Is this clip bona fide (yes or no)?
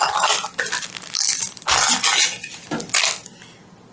yes